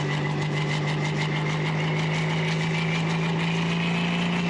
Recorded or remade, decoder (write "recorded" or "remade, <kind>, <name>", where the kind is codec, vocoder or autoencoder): recorded